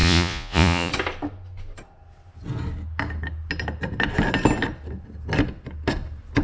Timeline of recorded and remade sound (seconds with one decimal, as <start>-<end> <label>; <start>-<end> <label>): 0.0-0.9 remade; 0.9-6.4 recorded